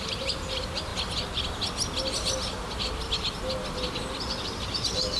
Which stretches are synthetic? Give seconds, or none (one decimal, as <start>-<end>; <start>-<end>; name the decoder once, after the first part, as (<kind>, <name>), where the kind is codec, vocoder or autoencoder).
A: none